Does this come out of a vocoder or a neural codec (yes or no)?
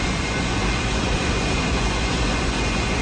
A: yes